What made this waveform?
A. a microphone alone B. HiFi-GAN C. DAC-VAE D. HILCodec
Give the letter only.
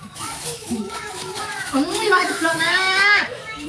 C